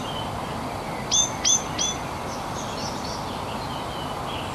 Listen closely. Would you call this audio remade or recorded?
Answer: recorded